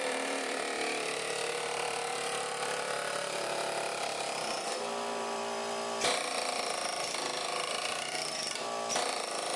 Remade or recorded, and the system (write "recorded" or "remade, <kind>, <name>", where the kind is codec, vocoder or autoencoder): remade, vocoder, BigVGAN v2